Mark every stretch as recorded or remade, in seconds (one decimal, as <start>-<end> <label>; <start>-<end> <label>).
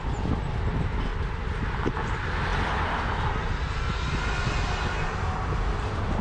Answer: 0.0-6.2 recorded